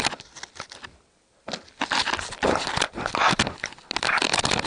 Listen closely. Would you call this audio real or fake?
real